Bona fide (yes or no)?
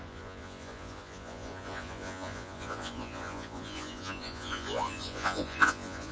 no